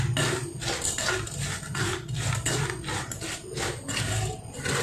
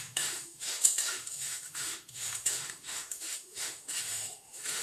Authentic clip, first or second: first